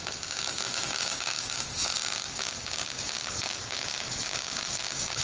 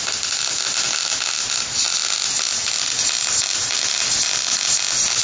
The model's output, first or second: first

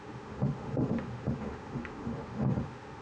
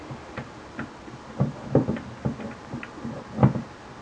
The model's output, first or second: first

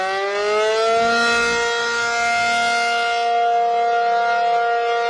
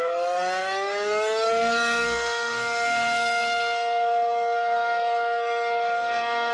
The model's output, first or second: second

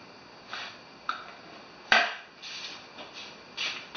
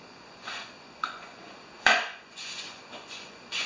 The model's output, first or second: second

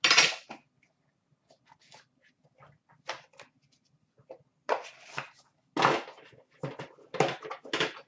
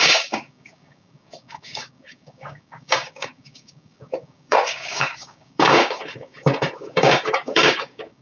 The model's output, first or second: second